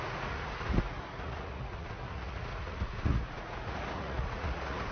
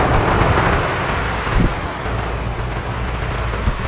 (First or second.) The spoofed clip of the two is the first